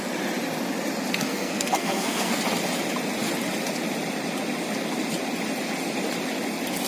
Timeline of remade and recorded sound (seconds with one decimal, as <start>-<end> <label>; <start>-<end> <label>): 0.0-1.3 recorded; 1.3-2.4 remade; 2.4-6.9 recorded